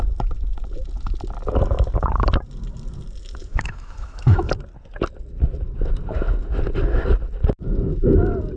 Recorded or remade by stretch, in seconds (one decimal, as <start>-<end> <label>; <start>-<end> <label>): 0.0-3.4 recorded; 3.4-4.5 remade; 4.5-8.6 recorded